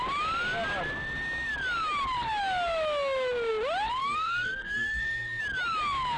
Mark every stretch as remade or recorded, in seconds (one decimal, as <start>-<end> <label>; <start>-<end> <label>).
0.0-4.0 recorded; 4.0-5.4 remade; 5.4-6.2 recorded